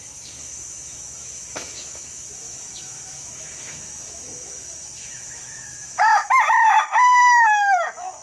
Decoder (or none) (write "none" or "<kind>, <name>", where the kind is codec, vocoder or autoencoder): autoencoder, DAC-VAE